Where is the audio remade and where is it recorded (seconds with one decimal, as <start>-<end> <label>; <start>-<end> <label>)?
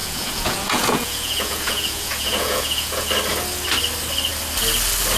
0.0-3.1 remade; 3.1-5.2 recorded